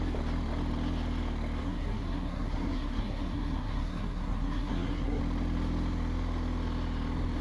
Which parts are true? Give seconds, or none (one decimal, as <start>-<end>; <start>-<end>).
0.0-1.6; 5.2-7.4